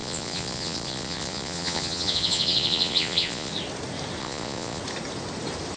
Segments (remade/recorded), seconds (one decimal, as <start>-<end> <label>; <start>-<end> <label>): 0.0-3.5 remade; 3.5-4.2 recorded; 4.2-4.8 remade; 4.8-5.8 recorded

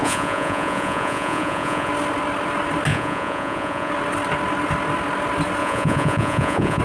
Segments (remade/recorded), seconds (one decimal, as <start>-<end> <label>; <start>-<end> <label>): 0.0-1.9 remade; 1.9-2.9 recorded; 2.9-3.9 remade; 3.9-5.6 recorded; 5.6-6.8 remade